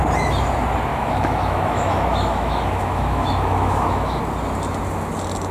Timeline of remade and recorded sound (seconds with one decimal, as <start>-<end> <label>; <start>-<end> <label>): 0.0-0.9 recorded; 0.9-4.2 remade; 4.2-5.5 recorded